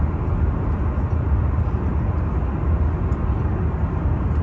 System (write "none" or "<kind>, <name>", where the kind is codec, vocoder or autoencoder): none